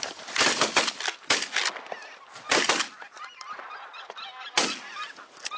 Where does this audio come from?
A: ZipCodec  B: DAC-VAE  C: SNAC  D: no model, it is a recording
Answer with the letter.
D